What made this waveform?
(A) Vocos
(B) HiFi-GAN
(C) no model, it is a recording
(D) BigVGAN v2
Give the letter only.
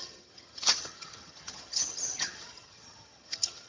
B